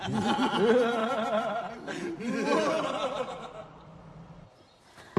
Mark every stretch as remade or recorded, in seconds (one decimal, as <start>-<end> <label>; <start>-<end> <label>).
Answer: 0.0-5.2 recorded